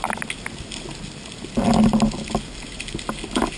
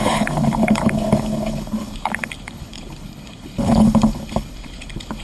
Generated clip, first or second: second